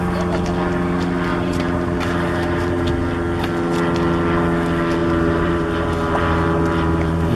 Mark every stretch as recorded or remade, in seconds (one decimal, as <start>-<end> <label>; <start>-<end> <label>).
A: 0.0-1.3 recorded; 1.3-2.9 remade; 2.9-5.0 recorded; 5.0-7.3 remade